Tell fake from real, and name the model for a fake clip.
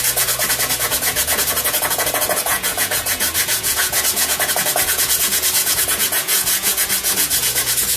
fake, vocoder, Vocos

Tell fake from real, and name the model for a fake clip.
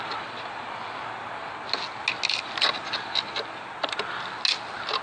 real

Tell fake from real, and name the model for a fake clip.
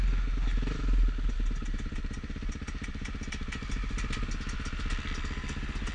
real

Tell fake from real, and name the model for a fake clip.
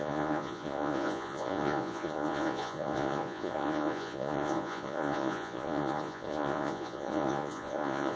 fake, vocoder, Vocos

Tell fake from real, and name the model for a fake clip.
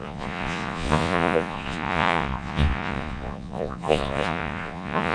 fake, vocoder, Vocos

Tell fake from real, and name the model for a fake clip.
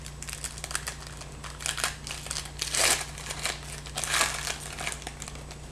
real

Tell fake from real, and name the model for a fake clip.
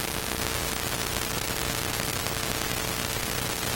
real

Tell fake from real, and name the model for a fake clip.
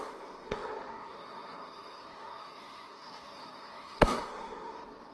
fake, codec, SNAC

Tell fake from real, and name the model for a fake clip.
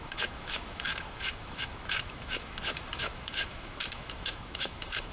fake, autoencoder, DAC-VAE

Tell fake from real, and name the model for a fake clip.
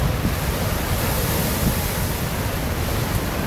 real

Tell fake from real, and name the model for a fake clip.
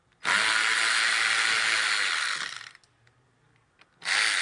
real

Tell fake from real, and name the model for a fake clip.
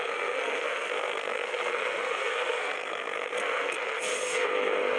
fake, codec, SNAC